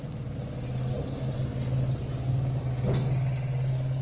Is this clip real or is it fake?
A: real